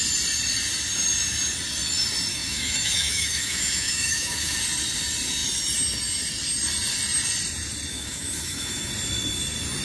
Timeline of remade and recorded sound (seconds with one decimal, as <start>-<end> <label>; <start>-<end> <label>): 0.0-2.3 recorded; 2.3-4.6 remade; 4.6-7.9 recorded; 7.9-8.9 remade; 8.9-9.8 recorded